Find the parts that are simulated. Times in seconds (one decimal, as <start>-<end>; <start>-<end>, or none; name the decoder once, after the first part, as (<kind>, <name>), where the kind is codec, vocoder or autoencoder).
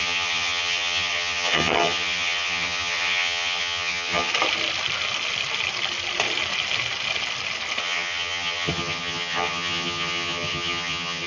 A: 0.0-4.3 (vocoder, HiFi-GAN); 7.8-11.3